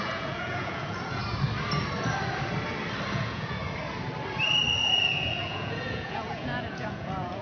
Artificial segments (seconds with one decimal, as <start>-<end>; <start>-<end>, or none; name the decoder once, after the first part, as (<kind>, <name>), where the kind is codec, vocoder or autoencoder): 0.0-1.2 (vocoder, Vocos); 3.1-3.6; 4.8-7.4